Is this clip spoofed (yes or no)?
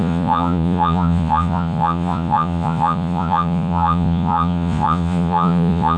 yes